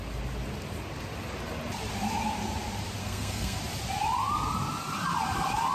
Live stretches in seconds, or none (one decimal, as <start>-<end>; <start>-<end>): 0.0-3.0; 3.6-5.7